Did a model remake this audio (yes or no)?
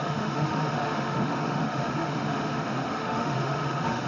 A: yes